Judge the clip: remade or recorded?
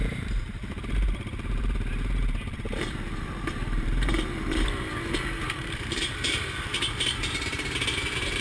remade